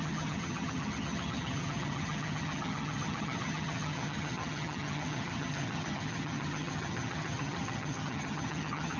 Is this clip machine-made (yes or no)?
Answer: yes